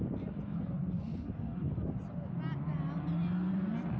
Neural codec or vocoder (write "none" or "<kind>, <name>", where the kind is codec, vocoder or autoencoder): none